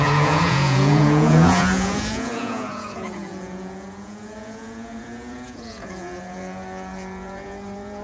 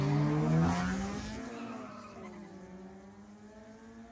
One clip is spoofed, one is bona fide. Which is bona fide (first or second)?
second